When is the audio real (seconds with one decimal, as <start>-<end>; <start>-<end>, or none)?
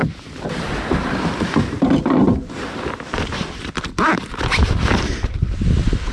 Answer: 3.7-6.1